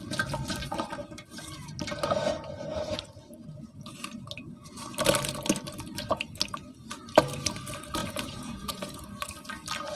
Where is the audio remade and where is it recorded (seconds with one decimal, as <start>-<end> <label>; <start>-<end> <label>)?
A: 0.0-8.0 recorded; 8.0-9.0 remade; 9.0-10.0 recorded